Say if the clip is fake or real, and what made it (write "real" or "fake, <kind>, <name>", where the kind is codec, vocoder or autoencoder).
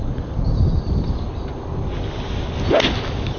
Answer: real